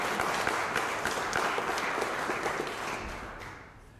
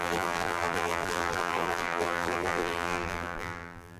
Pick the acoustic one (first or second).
first